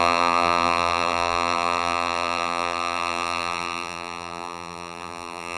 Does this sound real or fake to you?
fake